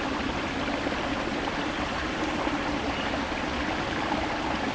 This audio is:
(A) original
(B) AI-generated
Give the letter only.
A